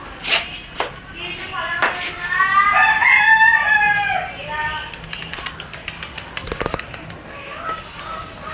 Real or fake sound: real